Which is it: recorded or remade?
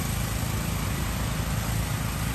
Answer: recorded